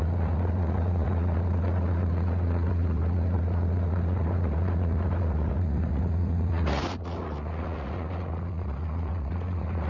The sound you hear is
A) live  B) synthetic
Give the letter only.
B